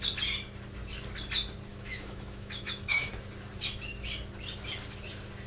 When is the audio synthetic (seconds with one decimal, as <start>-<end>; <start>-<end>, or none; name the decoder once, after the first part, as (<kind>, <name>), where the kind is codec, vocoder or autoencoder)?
1.7-3.1 (autoencoder, DAC-VAE)